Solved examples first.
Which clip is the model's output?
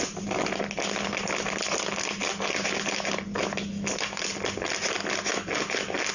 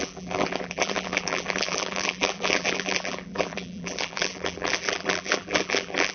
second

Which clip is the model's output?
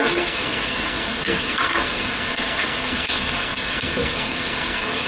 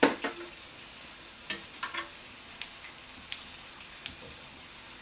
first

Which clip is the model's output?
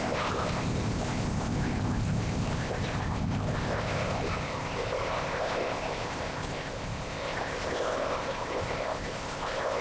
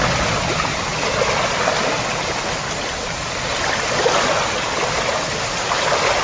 first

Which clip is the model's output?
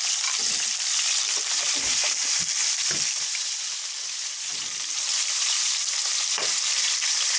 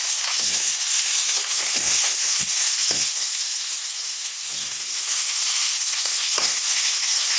second